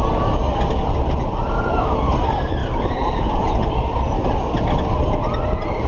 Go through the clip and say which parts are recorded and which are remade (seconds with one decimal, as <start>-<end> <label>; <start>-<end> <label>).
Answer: 0.0-5.9 recorded